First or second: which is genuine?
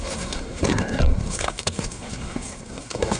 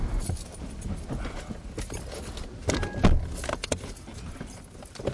second